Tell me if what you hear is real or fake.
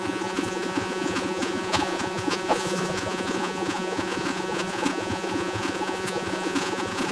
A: fake